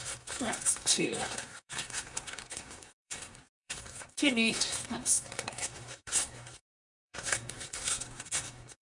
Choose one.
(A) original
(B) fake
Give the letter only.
B